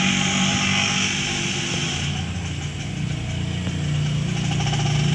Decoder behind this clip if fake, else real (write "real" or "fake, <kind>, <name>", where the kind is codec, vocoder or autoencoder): real